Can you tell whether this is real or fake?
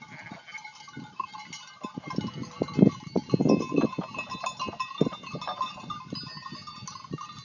real